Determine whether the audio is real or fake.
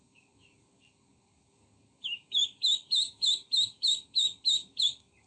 fake